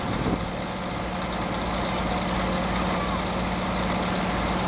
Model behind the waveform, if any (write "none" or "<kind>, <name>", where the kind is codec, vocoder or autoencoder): none